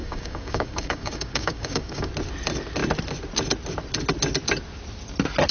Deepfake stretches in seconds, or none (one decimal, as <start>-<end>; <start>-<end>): 0.0-2.1